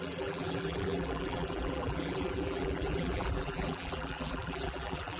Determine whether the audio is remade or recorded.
remade